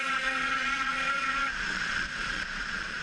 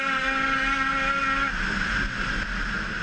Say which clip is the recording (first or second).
second